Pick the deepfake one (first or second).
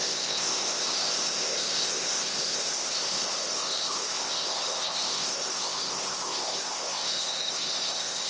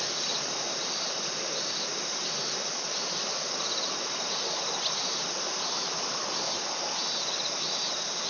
first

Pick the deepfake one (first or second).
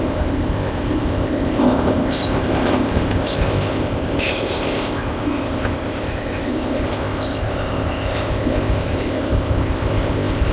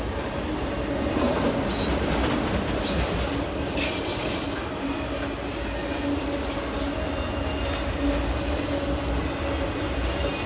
first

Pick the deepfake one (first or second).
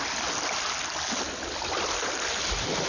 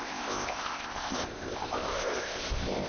second